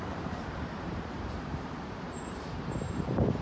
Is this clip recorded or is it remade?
remade